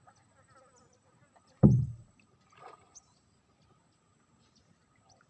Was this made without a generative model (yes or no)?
yes